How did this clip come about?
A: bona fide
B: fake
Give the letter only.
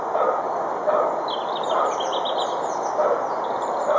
A